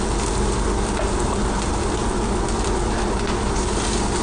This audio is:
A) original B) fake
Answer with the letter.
A